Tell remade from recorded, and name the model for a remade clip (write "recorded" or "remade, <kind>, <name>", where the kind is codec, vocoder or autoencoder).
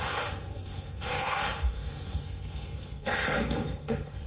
remade, codec, SNAC